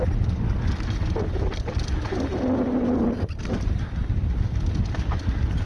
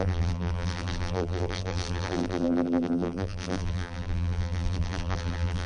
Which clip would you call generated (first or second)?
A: second